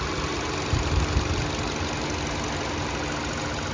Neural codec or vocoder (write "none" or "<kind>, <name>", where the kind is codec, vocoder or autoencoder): none